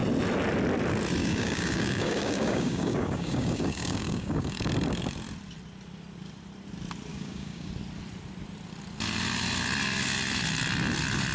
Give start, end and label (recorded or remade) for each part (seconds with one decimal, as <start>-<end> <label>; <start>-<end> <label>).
0.0-1.2 recorded; 1.2-4.7 remade; 4.7-7.1 recorded; 7.1-7.7 remade; 7.7-11.3 recorded